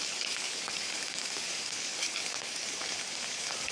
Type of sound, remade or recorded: remade